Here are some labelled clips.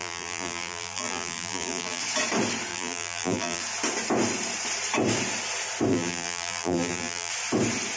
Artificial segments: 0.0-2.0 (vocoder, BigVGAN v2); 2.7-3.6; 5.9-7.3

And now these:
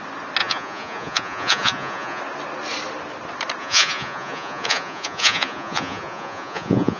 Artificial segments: 0.4-2.2 (vocoder, Vocos); 3.6-7.0

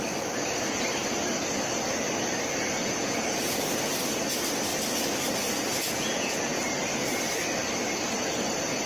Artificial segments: 2.8-3.5 (vocoder, Vocos); 5.7-6.6

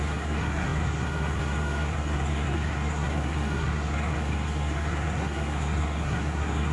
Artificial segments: 0.0-6.7 (codec, SNAC)

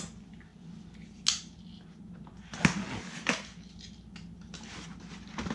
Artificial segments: none

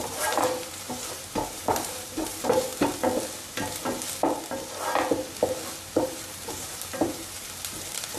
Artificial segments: 0.0-2.7 (vocoder, BigVGAN v2); 6.0-8.2

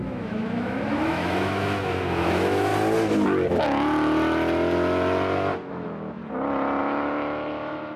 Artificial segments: 0.0-2.7 (autoencoder, DAC-VAE); 5.7-6.2; 6.8-8.0

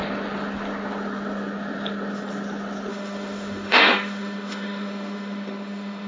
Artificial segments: 2.9-6.1 (autoencoder, DAC-VAE)